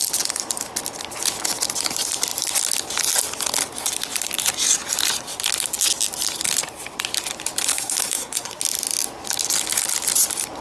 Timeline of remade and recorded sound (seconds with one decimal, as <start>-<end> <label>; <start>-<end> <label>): 0.0-7.7 recorded; 7.7-8.6 remade; 8.6-10.6 recorded